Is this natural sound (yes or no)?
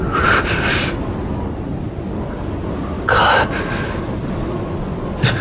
yes